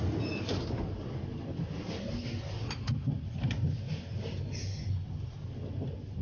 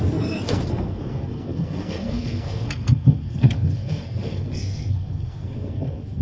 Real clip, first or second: first